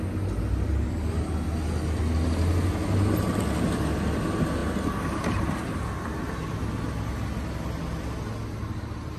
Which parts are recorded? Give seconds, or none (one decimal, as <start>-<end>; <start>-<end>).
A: 0.0-9.2